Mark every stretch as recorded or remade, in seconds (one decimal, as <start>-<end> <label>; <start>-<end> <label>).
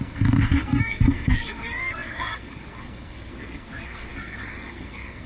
0.0-5.3 remade